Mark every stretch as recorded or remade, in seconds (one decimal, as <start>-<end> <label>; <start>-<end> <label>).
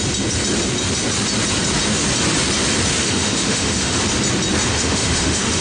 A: 0.0-3.0 recorded; 3.0-4.0 remade; 4.0-4.7 recorded; 4.7-5.6 remade